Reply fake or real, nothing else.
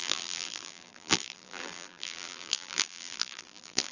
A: fake